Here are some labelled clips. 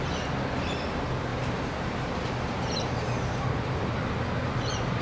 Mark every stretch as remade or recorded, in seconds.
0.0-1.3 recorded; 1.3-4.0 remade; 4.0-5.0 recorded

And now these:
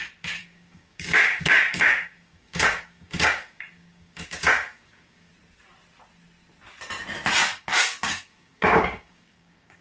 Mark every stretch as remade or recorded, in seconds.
0.0-0.4 recorded; 0.4-5.3 remade; 5.3-7.4 recorded; 7.4-9.8 remade

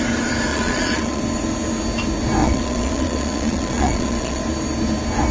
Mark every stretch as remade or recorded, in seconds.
0.0-0.5 recorded; 0.5-1.2 remade; 1.2-2.4 recorded; 2.4-4.4 remade; 4.4-5.3 recorded

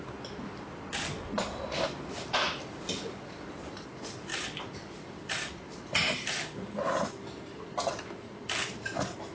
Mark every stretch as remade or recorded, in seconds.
0.0-4.3 recorded; 4.3-5.6 remade; 5.6-9.3 recorded

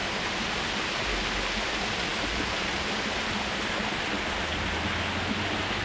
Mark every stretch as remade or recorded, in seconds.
0.0-1.0 remade; 1.0-5.8 recorded

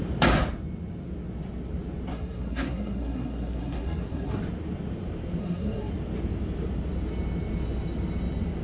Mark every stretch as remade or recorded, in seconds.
0.0-2.1 recorded; 2.1-4.4 remade; 4.4-5.4 recorded; 5.4-5.9 remade; 5.9-8.6 recorded